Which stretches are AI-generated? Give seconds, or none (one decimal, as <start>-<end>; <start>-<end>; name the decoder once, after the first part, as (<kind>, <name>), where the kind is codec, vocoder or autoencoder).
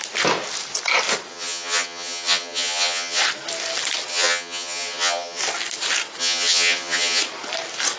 1.3-3.2 (vocoder, HiFi-GAN); 4.1-5.4; 6.2-7.2